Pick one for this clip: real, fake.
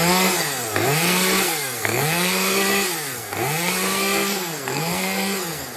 fake